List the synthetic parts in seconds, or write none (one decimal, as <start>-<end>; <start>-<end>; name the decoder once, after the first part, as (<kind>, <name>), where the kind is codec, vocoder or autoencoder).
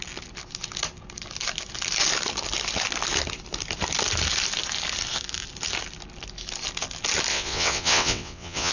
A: 7.3-8.7 (vocoder, WaveNeXt)